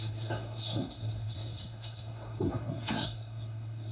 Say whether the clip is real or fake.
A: fake